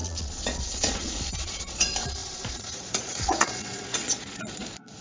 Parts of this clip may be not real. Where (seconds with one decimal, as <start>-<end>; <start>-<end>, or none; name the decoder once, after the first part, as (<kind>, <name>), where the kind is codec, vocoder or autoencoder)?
0.0-5.0 (vocoder, Vocos)